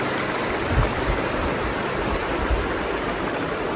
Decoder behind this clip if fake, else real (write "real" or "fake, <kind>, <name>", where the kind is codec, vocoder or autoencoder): real